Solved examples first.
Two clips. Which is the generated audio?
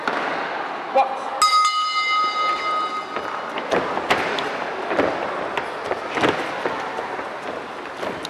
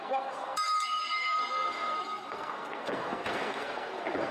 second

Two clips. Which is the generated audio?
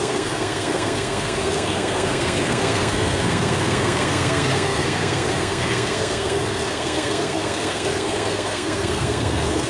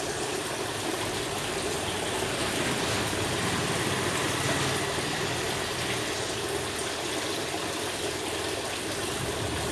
first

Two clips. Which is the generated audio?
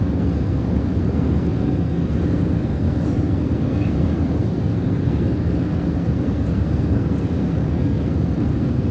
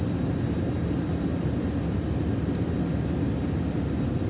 first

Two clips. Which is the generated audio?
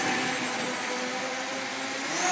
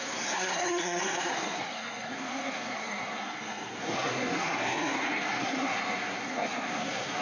second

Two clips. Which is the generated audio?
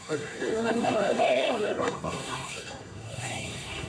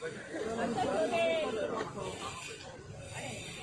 first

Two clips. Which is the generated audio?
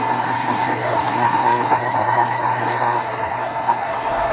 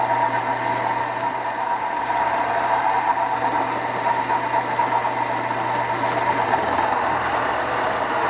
first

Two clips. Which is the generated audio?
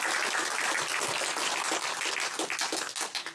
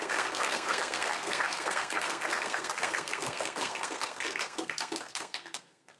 second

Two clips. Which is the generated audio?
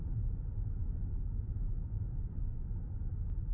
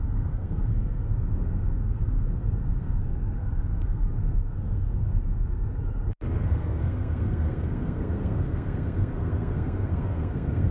second